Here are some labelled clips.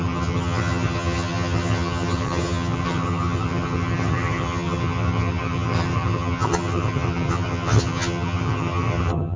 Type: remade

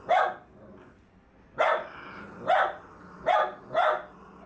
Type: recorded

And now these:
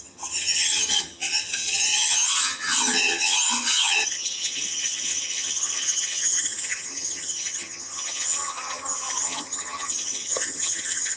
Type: remade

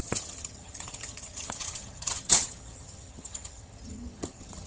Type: remade